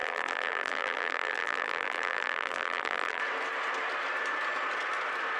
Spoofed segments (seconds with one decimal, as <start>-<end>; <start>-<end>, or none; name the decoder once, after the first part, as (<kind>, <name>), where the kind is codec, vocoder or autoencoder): 0.0-3.2 (vocoder, BigVGAN v2)